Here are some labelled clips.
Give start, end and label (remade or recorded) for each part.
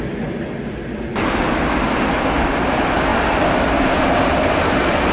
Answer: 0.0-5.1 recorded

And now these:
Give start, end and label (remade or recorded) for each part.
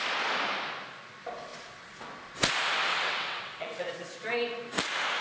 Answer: 0.0-2.9 recorded; 2.9-3.8 remade; 3.8-5.2 recorded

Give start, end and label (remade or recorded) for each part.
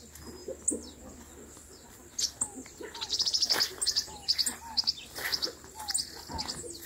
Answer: 0.0-6.9 recorded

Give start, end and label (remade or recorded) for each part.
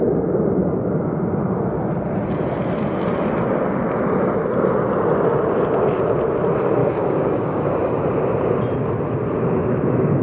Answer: 0.0-0.6 recorded; 0.6-1.2 remade; 1.2-6.8 recorded; 6.8-8.0 remade; 8.0-10.2 recorded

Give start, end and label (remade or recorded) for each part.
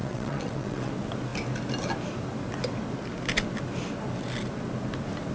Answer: 0.0-0.9 remade; 0.9-5.3 recorded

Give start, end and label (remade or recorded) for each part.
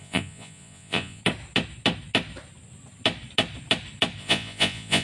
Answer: 0.0-1.2 remade; 1.2-4.2 recorded; 4.2-5.0 remade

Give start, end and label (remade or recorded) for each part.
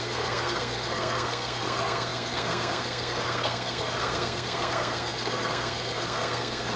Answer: 0.0-6.8 remade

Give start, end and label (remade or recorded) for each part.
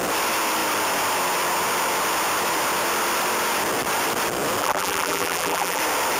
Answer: 0.0-4.6 recorded; 4.6-5.8 remade; 5.8-6.2 recorded